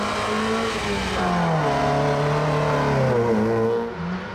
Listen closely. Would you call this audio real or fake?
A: real